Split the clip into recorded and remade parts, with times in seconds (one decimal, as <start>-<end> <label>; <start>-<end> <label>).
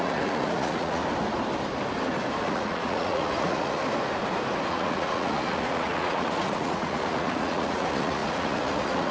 0.0-1.0 remade; 1.0-2.4 recorded; 2.4-3.8 remade; 3.8-4.7 recorded; 4.7-9.1 remade